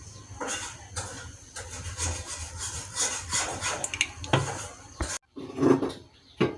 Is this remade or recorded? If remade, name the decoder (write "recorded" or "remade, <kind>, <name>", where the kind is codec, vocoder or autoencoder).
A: recorded